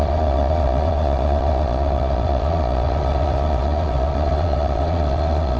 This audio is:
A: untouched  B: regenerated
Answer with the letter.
B